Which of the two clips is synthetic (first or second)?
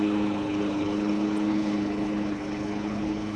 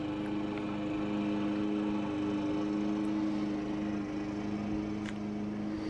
first